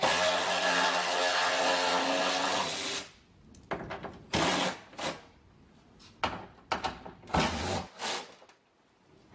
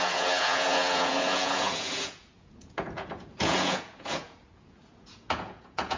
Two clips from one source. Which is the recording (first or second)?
first